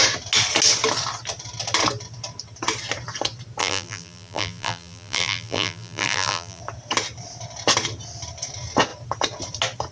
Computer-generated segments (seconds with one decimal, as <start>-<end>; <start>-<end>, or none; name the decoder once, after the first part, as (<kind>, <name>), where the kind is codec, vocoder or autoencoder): 3.6-6.6 (vocoder, BigVGAN v2)